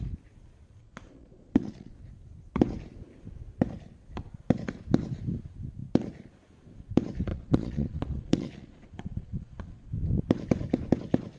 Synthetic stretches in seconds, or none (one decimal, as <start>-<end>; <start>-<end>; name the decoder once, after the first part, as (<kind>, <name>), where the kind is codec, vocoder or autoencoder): 0.8-1.9 (vocoder, Vocos); 7.3-9.9